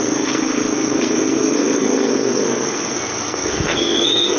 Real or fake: fake